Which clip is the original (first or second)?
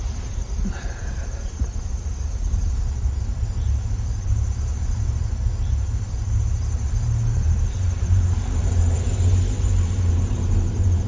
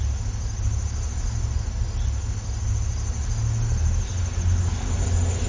second